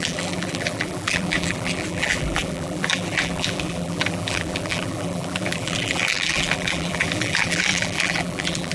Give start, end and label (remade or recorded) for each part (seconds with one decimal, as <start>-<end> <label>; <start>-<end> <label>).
0.0-8.7 remade